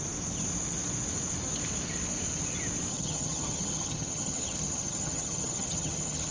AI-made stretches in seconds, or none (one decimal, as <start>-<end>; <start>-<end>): 2.9-6.3